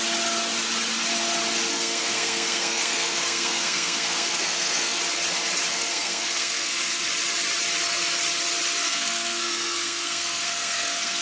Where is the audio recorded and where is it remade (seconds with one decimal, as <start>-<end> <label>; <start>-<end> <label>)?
0.0-1.7 recorded; 1.7-5.0 remade; 5.0-5.7 recorded; 5.7-7.0 remade; 7.0-8.8 recorded; 8.8-11.2 remade